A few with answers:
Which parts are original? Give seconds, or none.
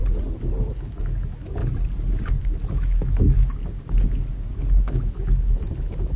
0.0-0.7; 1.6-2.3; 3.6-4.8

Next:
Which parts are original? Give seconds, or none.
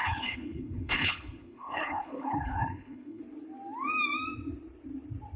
3.2-5.4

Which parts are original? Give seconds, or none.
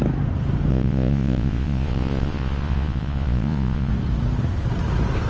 0.0-0.7; 3.9-5.3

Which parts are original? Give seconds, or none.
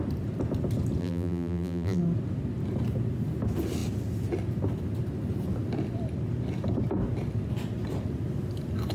0.0-1.0; 2.0-8.9